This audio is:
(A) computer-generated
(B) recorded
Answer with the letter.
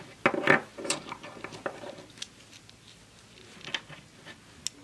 B